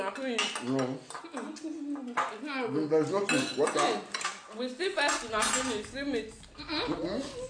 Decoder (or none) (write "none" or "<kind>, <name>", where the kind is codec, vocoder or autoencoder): none